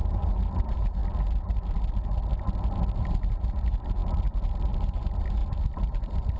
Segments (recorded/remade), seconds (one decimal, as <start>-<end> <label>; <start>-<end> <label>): 0.0-0.6 recorded; 0.6-1.0 remade; 1.0-3.0 recorded; 3.0-4.0 remade; 4.0-4.8 recorded; 4.8-6.4 remade